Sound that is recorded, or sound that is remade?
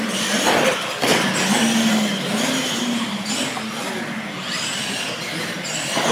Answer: recorded